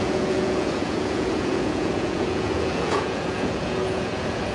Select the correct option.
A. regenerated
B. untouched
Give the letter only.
A